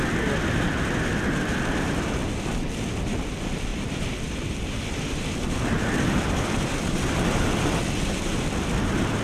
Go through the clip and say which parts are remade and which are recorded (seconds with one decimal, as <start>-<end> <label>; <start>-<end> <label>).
0.0-3.7 recorded; 3.7-7.6 remade; 7.6-9.2 recorded